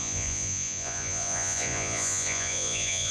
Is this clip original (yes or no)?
no